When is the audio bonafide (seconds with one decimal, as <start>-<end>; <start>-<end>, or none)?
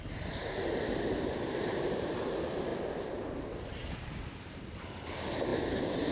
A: 2.7-3.4